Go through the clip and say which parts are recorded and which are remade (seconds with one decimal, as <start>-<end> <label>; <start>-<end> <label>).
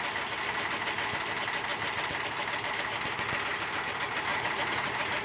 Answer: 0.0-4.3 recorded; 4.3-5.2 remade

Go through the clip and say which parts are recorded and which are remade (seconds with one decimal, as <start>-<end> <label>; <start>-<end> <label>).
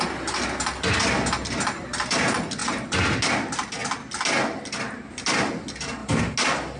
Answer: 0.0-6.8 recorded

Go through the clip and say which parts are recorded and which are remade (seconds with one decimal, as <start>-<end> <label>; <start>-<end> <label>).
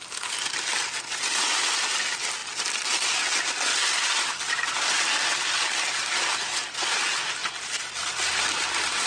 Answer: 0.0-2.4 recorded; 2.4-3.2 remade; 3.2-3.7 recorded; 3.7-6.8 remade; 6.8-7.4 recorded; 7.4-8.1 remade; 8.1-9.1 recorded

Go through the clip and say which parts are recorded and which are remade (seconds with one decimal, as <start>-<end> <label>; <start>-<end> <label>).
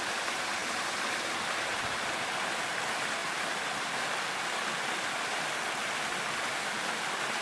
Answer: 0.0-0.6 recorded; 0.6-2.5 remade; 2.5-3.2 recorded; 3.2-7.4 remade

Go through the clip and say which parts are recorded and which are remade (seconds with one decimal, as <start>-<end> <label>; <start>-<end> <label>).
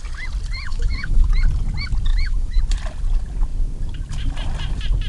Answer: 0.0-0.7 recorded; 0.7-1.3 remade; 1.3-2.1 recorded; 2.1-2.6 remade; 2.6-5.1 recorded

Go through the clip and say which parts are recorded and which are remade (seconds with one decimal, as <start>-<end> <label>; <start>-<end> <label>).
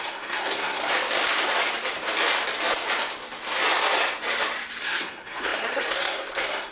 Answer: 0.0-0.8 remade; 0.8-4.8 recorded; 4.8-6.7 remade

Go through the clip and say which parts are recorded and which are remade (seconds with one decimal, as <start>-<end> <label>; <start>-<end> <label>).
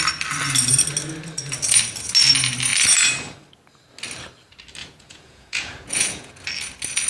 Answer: 0.0-4.8 recorded; 4.8-6.3 remade; 6.3-7.1 recorded